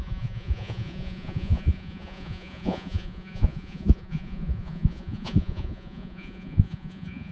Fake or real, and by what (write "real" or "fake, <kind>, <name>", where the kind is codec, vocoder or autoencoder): fake, vocoder, Vocos